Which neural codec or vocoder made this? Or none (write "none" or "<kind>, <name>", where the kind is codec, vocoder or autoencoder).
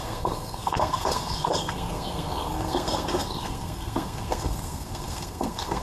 codec, SNAC